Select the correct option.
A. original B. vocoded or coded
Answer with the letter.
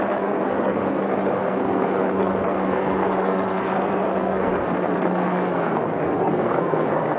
B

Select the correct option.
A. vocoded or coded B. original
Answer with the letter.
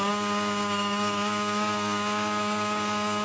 A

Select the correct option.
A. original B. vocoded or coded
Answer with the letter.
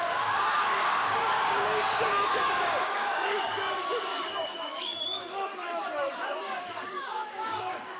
B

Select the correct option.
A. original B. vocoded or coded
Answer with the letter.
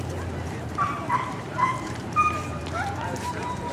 B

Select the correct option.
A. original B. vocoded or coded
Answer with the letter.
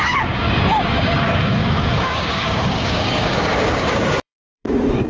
B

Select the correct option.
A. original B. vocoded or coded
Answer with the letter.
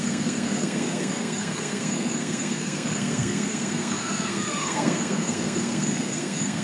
B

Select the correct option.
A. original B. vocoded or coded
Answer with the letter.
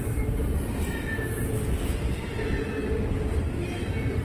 A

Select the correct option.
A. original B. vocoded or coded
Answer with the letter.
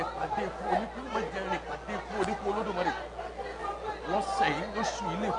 A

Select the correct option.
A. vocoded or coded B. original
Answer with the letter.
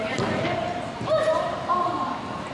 A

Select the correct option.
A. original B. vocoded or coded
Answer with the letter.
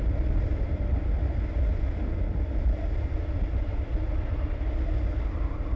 A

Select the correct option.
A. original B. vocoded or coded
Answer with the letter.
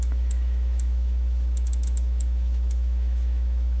B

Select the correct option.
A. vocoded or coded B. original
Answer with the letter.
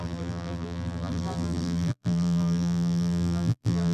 A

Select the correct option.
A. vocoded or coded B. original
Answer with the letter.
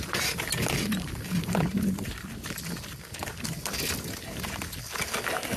B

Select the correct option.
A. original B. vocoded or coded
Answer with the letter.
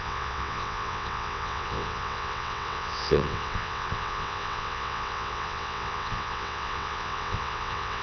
B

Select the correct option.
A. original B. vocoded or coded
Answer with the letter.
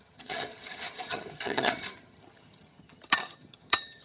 B